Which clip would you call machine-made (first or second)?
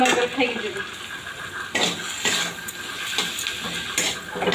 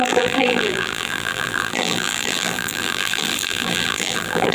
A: second